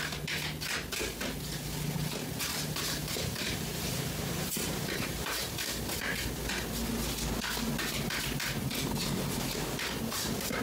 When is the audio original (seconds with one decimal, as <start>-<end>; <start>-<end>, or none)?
0.0-2.5; 6.0-10.6